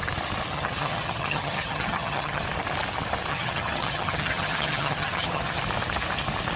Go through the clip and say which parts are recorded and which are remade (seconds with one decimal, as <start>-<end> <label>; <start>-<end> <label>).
0.0-0.5 recorded; 0.5-2.4 remade; 2.4-3.3 recorded; 3.3-5.6 remade; 5.6-6.6 recorded